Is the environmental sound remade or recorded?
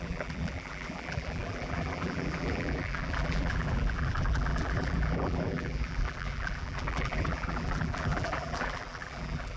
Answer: remade